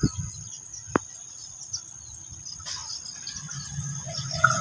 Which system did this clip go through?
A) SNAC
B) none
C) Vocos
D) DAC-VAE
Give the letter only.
B